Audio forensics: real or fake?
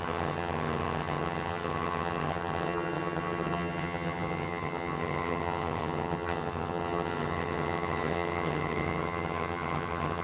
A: fake